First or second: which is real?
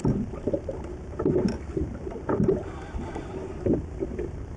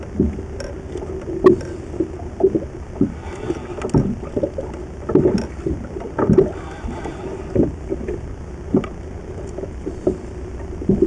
second